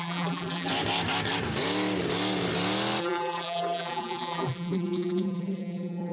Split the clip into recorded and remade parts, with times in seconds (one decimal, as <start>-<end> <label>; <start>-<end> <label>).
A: 0.0-0.7 remade; 0.7-3.0 recorded; 3.0-6.1 remade